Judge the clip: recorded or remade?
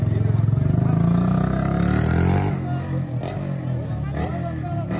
recorded